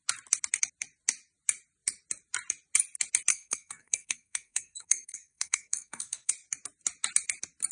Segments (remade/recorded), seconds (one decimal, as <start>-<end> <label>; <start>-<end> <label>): 0.0-3.3 recorded; 3.3-6.3 remade; 6.3-7.7 recorded